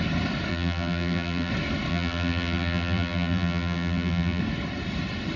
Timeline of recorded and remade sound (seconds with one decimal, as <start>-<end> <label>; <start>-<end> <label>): 0.0-0.5 recorded; 0.5-1.5 remade; 1.5-1.9 recorded; 1.9-4.4 remade; 4.4-5.4 recorded